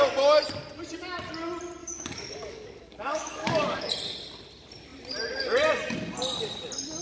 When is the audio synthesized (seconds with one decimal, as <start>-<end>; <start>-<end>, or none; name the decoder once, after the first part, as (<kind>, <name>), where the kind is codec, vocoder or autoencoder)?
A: 1.8-3.9 (codec, DAC)